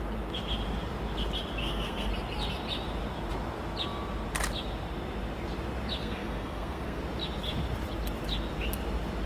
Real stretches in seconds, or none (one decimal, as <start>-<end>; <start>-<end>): 0.0-1.6; 2.1-6.0; 7.0-9.3